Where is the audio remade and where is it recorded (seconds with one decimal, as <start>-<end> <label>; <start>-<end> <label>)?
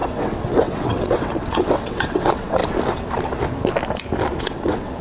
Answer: 0.0-2.6 remade; 2.6-4.4 recorded; 4.4-5.0 remade